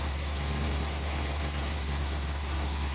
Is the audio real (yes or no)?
no